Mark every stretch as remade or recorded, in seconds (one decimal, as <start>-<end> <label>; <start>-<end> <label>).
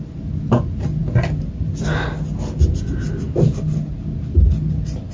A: 0.0-5.1 recorded